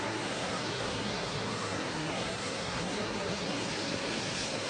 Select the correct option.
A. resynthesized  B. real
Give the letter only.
A